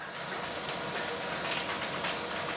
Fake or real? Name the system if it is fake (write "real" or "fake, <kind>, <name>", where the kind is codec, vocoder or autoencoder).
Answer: real